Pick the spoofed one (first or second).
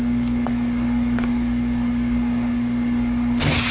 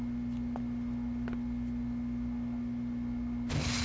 first